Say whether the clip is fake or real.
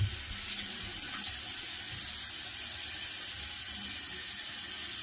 real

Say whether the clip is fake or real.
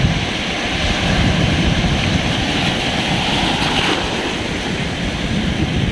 real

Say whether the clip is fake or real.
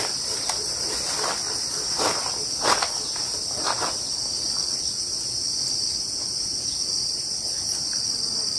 real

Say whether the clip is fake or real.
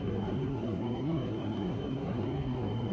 fake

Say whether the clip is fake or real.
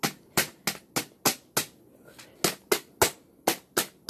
real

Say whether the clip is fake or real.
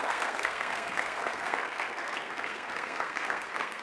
fake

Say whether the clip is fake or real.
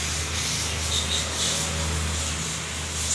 real